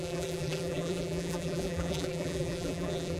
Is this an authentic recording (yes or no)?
no